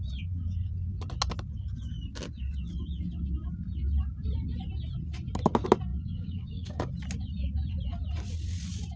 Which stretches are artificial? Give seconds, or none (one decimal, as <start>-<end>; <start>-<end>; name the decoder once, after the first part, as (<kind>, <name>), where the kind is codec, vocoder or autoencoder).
5.9-6.9 (codec, DAC)